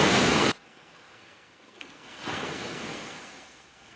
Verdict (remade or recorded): remade